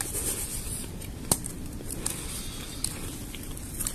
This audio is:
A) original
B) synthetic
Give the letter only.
A